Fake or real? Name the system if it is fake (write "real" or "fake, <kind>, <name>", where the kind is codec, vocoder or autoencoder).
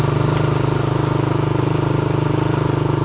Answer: real